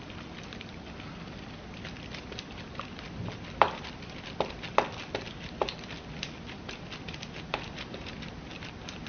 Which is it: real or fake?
real